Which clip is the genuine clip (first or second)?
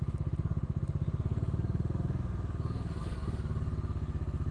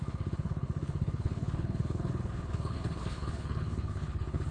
first